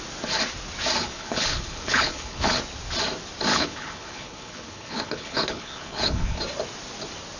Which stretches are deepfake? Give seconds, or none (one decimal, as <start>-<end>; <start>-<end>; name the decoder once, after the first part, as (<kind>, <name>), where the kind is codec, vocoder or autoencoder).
1.0-2.6 (codec, HILCodec); 3.5-6.4